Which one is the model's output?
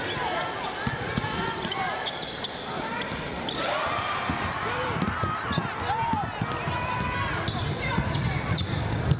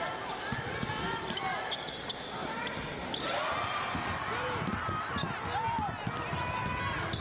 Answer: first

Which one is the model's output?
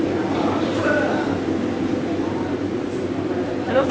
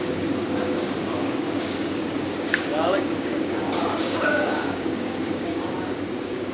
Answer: second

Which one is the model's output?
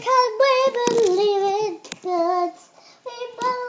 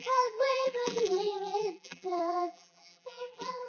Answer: second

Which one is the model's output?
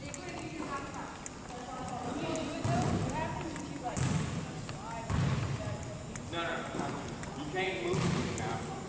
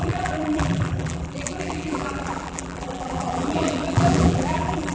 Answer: second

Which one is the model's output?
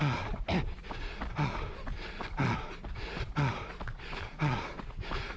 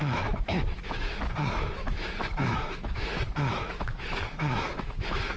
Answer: second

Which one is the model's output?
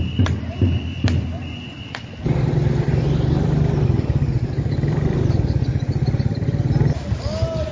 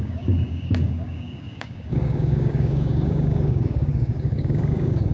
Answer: second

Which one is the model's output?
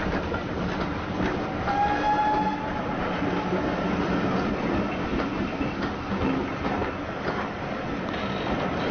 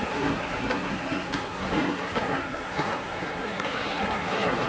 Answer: second